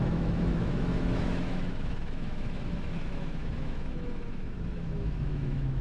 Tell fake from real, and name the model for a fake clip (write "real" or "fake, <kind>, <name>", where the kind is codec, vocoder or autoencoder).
fake, autoencoder, DAC-VAE